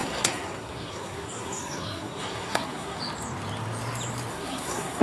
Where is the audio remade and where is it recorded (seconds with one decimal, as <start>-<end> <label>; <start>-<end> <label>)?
0.0-3.0 remade; 3.0-4.3 recorded; 4.3-5.0 remade